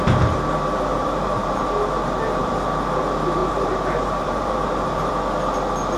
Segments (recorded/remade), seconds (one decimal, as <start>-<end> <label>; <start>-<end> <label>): 0.0-0.9 recorded; 0.9-1.7 remade; 1.7-3.4 recorded; 3.4-5.1 remade; 5.1-6.0 recorded

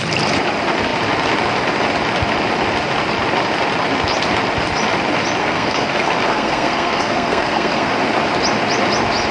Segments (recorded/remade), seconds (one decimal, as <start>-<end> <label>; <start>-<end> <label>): 0.0-5.4 recorded; 5.4-7.9 remade; 7.9-9.3 recorded

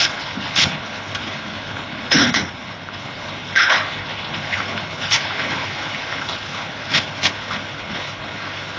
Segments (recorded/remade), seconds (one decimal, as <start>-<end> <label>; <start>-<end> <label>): 0.0-8.8 remade

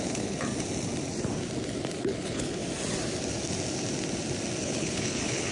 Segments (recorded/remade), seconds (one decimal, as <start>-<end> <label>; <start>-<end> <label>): 0.0-0.5 remade; 0.5-2.0 recorded; 2.0-2.6 remade; 2.6-4.6 recorded; 4.6-5.5 remade

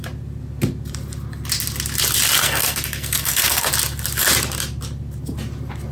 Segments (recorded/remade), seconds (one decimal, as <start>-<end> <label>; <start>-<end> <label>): 0.0-2.4 recorded; 2.4-3.7 remade; 3.7-5.9 recorded

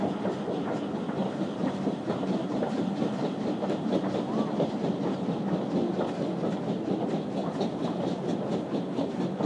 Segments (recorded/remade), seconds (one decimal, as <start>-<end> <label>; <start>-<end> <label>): 0.0-1.2 recorded; 1.2-4.0 remade; 4.0-7.4 recorded; 7.4-8.2 remade; 8.2-9.5 recorded